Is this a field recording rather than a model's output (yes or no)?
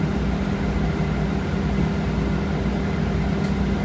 yes